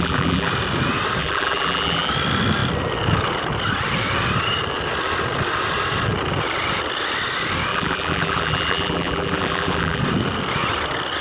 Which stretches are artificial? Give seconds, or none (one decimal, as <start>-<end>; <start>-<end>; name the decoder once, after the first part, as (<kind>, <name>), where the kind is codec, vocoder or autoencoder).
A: 0.0-0.5 (vocoder, BigVGAN v2); 1.2-2.1; 7.7-10.0